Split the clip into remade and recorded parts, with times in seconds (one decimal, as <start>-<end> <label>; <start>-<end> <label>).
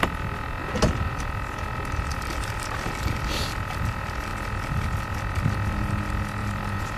0.0-0.6 recorded; 0.6-1.2 remade; 1.2-6.4 recorded; 6.4-7.0 remade